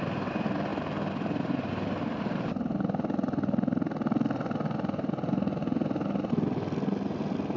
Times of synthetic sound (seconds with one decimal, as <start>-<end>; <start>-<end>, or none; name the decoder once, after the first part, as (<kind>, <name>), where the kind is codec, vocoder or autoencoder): none